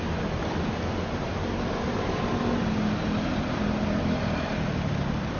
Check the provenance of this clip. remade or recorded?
recorded